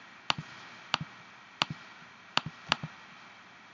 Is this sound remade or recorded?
recorded